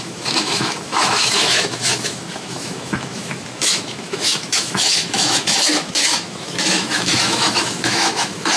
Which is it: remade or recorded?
remade